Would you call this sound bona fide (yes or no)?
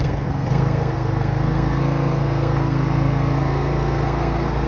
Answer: no